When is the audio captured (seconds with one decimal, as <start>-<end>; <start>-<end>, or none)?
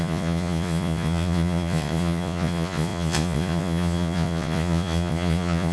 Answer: none